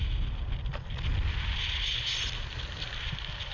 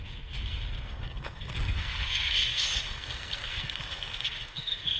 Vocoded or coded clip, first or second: second